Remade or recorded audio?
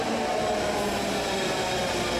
recorded